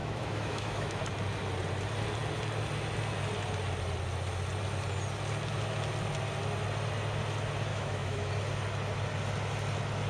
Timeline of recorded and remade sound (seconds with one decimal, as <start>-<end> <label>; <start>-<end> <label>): 0.0-1.0 remade; 1.0-7.7 recorded; 7.7-8.3 remade; 8.3-10.1 recorded